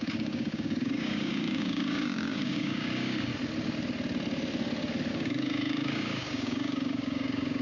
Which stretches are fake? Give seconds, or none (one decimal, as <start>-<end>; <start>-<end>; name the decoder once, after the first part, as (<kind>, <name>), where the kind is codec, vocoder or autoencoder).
0.0-3.3 (codec, DAC); 5.1-7.6